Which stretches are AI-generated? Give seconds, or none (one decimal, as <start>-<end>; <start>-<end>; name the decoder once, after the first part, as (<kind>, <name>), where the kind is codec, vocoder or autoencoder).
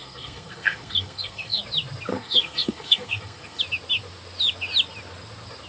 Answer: 0.0-1.6 (codec, SNAC); 2.1-3.6